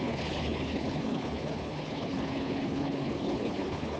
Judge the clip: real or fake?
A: fake